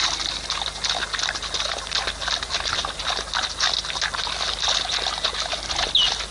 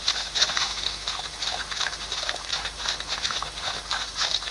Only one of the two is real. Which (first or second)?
first